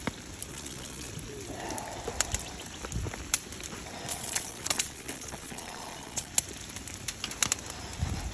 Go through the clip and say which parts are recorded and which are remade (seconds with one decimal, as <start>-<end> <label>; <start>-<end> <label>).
0.0-0.5 recorded; 0.5-1.1 remade; 1.1-4.1 recorded; 4.1-6.3 remade; 6.3-8.3 recorded